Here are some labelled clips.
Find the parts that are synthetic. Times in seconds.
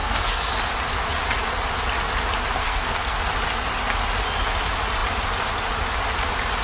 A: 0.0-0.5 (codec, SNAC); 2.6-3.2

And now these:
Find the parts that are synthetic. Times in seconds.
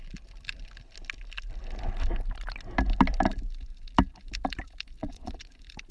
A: 5.0-5.5 (vocoder, Vocos)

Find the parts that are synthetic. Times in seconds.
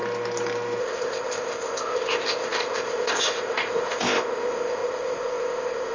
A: 0.8-5.9 (codec, ZipCodec)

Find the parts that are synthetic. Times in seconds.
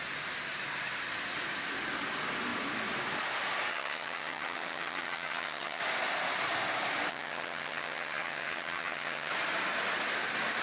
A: 3.7-5.8 (vocoder, HiFi-GAN); 7.1-9.3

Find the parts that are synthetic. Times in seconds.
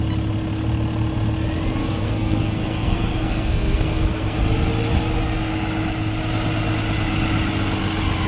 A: 1.8-4.4 (codec, SNAC)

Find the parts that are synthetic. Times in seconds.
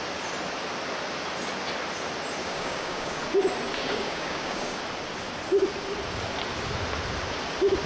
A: 2.4-3.2 (codec, DAC); 3.8-4.8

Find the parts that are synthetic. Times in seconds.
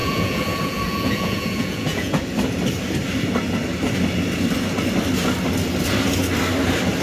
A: 0.0-2.2 (vocoder, Vocos)